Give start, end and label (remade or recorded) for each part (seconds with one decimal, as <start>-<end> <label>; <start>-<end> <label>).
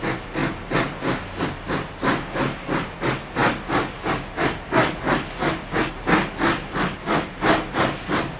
0.0-8.4 recorded